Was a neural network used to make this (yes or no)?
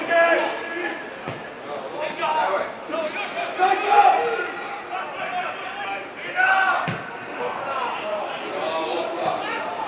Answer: no